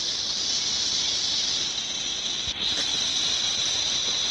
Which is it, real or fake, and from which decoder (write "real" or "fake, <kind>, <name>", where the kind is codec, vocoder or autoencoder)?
real